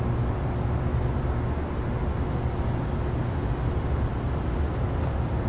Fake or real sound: real